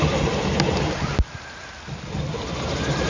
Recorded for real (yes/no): yes